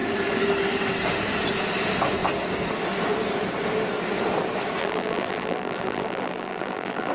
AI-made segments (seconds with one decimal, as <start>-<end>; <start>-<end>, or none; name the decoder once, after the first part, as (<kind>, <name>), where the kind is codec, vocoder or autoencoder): 4.8-7.1 (vocoder, BigVGAN v2)